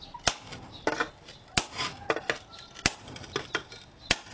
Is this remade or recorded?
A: recorded